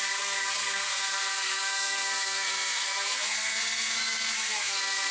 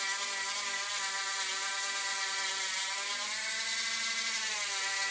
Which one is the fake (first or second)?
first